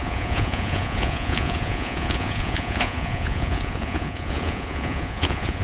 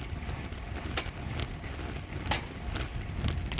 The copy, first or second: first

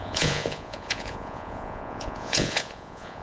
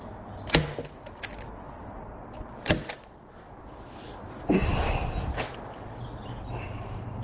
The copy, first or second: first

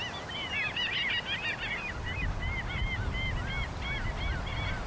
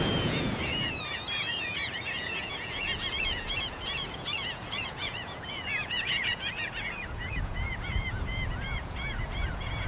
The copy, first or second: second